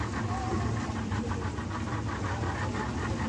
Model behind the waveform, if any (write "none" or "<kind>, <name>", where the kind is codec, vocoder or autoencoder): none